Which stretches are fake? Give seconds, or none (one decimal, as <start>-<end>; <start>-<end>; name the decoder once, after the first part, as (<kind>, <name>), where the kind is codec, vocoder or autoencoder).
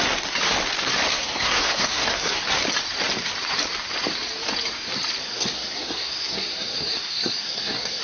1.1-2.4 (codec, SNAC); 5.2-8.0